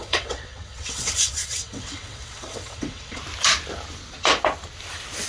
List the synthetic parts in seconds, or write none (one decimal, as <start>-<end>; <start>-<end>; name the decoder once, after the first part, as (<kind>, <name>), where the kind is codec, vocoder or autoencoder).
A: 0.0-3.2 (vocoder, WaveNeXt)